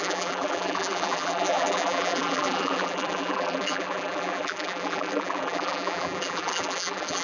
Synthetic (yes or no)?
yes